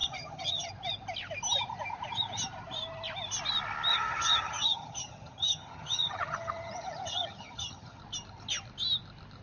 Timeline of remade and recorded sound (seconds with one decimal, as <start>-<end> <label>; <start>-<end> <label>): 0.0-0.7 remade; 0.7-3.9 recorded; 3.9-8.0 remade; 8.0-9.4 recorded